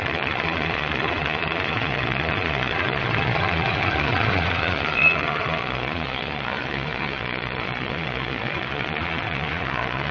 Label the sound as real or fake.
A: fake